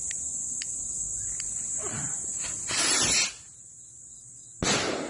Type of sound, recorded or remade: recorded